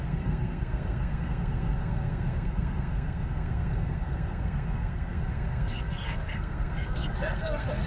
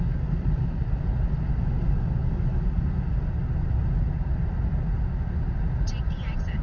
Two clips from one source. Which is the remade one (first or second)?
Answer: first